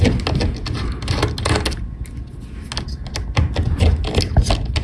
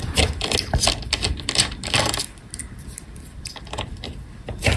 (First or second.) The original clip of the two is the first